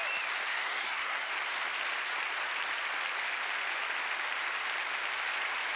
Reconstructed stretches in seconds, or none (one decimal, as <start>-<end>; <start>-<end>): 0.5-1.3